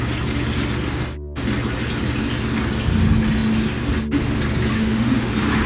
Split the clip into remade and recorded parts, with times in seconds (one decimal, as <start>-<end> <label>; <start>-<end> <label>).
0.0-4.7 recorded; 4.7-5.3 remade; 5.3-5.7 recorded